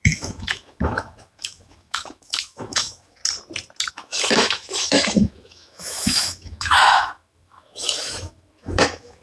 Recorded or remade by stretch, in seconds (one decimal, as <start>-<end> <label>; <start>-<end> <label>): 0.0-3.2 remade; 3.2-3.9 recorded; 3.9-9.2 remade